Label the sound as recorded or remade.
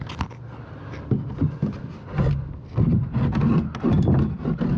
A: recorded